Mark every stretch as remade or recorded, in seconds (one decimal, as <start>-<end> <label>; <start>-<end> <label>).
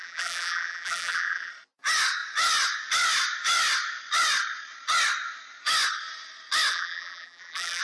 0.0-1.5 remade; 1.5-6.7 recorded; 6.7-7.8 remade